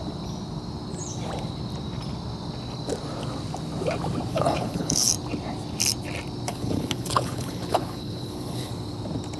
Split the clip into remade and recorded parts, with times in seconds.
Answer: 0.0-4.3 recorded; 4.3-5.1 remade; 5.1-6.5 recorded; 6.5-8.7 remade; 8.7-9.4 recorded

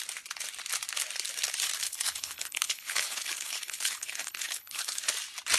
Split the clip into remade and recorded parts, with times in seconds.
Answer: 0.0-1.8 recorded; 1.8-5.1 remade; 5.1-5.6 recorded